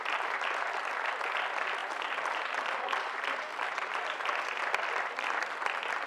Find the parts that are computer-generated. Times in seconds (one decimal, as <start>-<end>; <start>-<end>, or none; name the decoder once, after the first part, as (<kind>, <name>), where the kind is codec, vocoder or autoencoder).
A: none